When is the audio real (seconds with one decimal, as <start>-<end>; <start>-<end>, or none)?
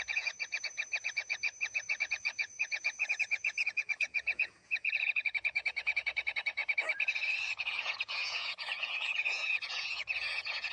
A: 6.6-7.5